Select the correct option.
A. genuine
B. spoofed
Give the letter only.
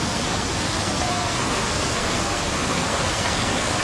B